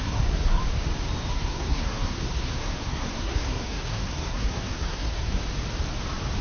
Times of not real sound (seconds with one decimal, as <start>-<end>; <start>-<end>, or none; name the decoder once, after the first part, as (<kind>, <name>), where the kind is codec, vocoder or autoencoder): 0.0-0.6 (codec, SNAC); 1.3-5.4